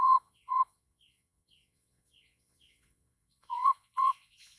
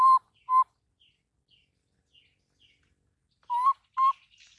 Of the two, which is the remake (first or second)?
first